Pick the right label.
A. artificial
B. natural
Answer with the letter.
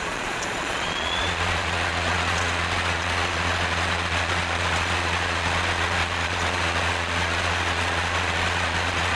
A